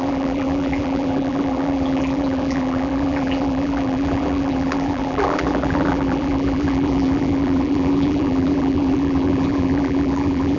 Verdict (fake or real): fake